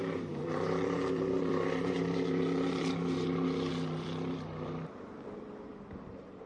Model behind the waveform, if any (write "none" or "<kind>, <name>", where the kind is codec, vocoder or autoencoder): vocoder, BigVGAN v2